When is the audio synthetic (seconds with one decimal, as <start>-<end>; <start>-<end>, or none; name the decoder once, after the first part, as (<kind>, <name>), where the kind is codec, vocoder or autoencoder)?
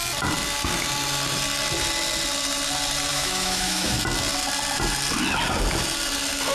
3.1-4.0 (autoencoder, DAC-VAE)